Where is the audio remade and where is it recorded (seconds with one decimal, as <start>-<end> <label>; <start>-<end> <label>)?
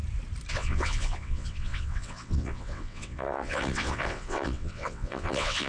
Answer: 0.0-0.5 recorded; 0.5-5.7 remade